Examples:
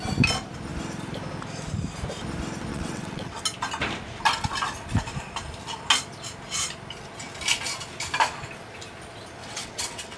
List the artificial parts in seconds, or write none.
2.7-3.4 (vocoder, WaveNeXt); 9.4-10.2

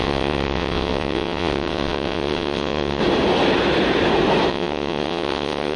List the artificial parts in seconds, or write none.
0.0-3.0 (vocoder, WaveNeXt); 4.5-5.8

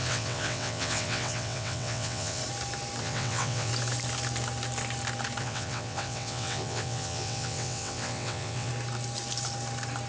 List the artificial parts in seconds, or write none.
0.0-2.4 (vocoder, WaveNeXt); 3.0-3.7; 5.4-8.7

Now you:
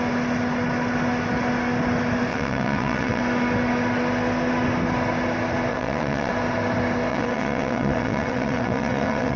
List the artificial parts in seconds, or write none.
2.3-3.2 (vocoder, WaveNeXt); 5.7-6.3; 7.1-9.4